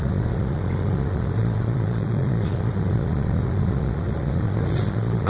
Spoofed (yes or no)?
yes